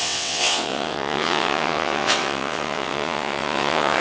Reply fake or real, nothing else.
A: fake